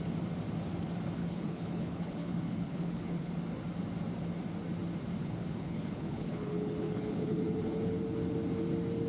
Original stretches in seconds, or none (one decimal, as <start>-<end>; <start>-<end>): 0.0-1.2; 3.3-5.2; 8.0-9.1